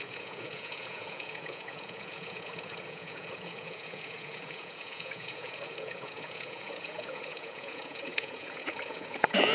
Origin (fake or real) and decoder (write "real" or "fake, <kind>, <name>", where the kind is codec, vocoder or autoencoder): fake, vocoder, Vocos